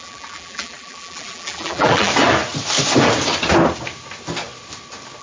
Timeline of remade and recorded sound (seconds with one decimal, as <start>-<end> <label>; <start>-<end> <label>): 0.0-2.1 remade; 2.1-5.2 recorded